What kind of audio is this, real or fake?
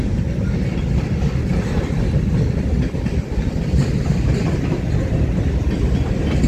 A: real